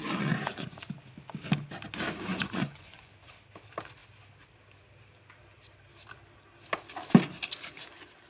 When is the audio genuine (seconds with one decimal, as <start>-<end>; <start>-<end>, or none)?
0.8-2.3; 3.1-8.3